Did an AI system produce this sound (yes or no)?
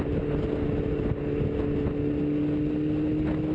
no